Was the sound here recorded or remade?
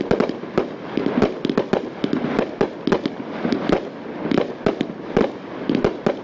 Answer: recorded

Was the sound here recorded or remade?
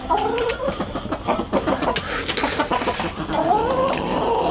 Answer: recorded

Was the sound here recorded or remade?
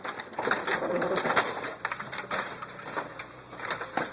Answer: recorded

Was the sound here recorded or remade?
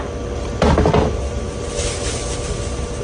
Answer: recorded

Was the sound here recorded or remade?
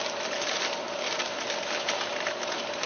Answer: remade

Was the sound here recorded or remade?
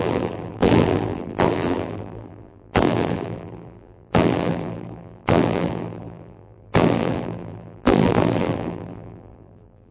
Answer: remade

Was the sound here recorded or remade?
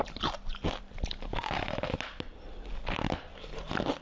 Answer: recorded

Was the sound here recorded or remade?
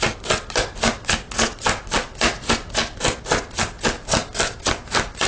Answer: recorded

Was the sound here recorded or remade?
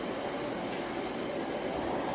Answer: recorded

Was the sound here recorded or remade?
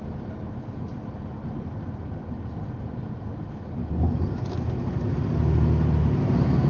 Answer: recorded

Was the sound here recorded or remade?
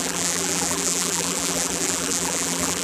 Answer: remade